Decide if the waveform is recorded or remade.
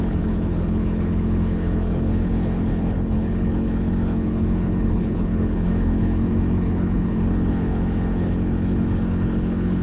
remade